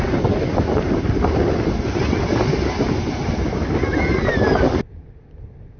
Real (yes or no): yes